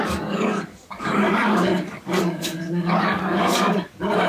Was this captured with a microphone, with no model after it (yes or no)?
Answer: no